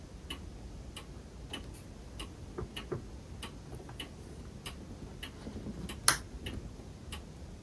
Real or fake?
real